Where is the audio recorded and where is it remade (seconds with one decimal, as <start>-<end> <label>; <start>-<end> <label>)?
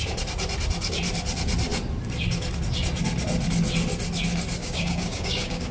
0.0-4.6 recorded; 4.6-5.7 remade